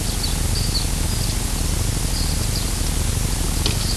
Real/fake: real